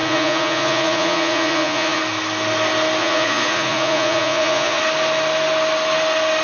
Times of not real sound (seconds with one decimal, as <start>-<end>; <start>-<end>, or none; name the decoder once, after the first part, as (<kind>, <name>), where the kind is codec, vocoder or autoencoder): 0.0-2.0 (vocoder, Vocos); 3.0-4.8